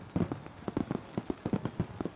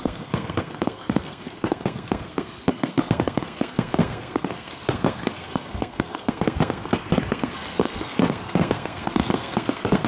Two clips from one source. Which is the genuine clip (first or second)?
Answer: first